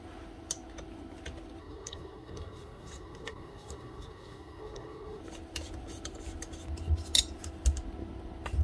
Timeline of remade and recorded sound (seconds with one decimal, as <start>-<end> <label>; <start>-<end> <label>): 0.0-1.6 recorded; 1.6-5.2 remade; 5.2-8.6 recorded